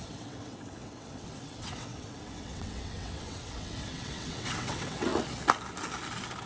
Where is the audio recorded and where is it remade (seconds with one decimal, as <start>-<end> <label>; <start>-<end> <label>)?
0.0-5.1 remade; 5.1-6.5 recorded

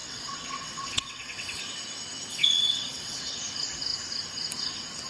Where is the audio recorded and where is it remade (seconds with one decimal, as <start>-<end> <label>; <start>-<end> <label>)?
0.0-1.6 remade; 1.6-2.3 recorded; 2.3-3.3 remade; 3.3-5.1 recorded

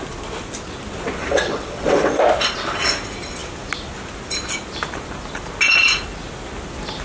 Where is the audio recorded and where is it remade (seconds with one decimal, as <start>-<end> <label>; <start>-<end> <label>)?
0.0-1.2 recorded; 1.2-2.2 remade; 2.2-7.0 recorded